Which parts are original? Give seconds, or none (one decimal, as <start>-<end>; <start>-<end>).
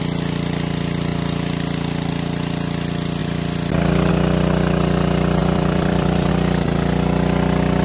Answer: 0.0-1.1; 2.1-3.2; 4.1-5.4; 6.3-7.8